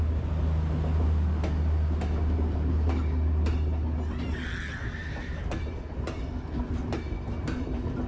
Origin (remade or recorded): recorded